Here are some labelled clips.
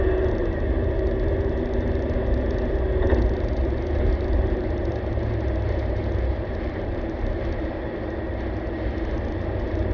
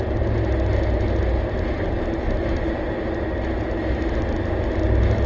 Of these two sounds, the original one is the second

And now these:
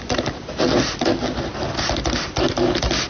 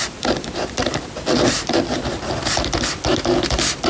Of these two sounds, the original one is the first